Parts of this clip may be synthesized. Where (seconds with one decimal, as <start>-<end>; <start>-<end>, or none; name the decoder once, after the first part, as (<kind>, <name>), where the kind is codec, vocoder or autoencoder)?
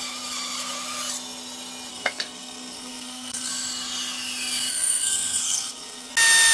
1.9-3.5 (codec, SNAC); 4.7-6.1